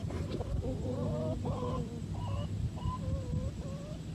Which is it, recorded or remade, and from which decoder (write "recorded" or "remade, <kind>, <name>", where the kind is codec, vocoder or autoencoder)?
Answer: recorded